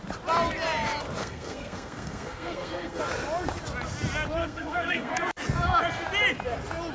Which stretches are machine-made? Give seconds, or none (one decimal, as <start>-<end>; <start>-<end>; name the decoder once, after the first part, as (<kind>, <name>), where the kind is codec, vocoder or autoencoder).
1.2-3.0 (codec, SNAC); 4.4-5.1